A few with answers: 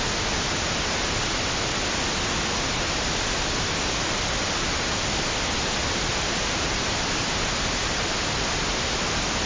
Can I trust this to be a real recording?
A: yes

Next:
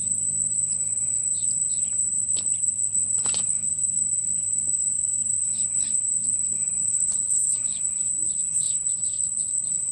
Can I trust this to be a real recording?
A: yes